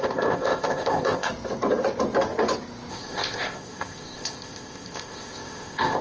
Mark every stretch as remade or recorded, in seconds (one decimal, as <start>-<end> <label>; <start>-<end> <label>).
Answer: 0.0-1.3 remade; 1.3-2.9 recorded; 2.9-6.0 remade